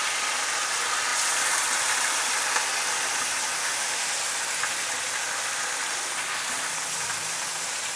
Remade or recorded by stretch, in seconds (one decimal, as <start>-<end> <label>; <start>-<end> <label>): 0.0-3.6 recorded; 3.6-4.1 remade; 4.1-8.0 recorded